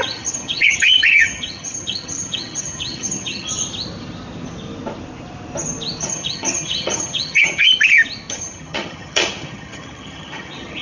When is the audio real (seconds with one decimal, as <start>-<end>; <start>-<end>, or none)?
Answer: 3.5-6.0; 7.7-8.3

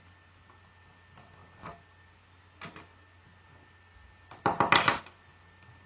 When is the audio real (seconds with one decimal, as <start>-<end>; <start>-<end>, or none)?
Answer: 0.0-5.9